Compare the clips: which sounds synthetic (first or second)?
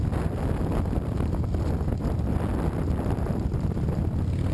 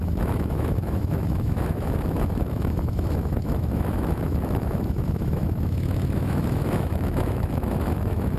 second